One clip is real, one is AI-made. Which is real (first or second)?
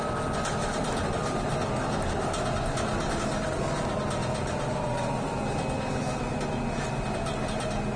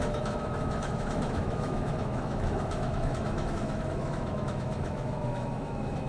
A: first